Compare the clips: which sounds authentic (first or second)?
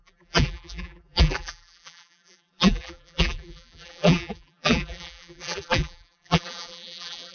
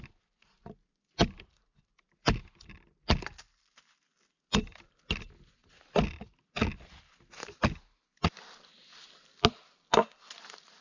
second